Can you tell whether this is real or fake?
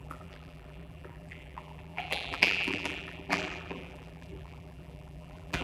fake